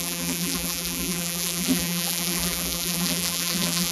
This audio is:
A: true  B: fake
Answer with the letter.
B